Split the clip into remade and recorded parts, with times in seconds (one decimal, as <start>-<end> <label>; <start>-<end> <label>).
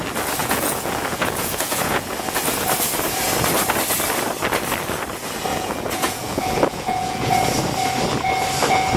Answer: 0.0-0.4 recorded; 0.4-2.4 remade; 2.4-5.5 recorded; 5.5-7.3 remade; 7.3-9.0 recorded